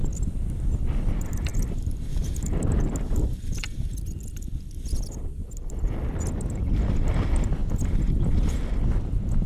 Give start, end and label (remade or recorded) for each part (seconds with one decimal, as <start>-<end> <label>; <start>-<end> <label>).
0.0-7.6 remade; 7.6-8.9 recorded; 8.9-9.5 remade